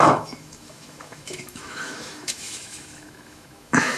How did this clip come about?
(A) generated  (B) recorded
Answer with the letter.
A